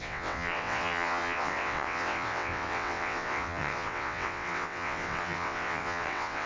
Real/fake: fake